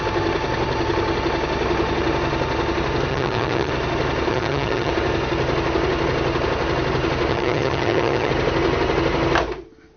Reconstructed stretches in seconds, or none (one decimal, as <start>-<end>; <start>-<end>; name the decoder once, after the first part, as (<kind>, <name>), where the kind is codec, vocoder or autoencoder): 3.1-3.7 (vocoder, HiFi-GAN); 4.3-4.9; 7.3-8.3